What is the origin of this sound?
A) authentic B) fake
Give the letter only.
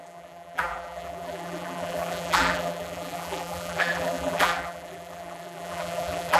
B